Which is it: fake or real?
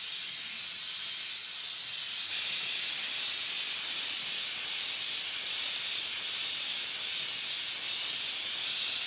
real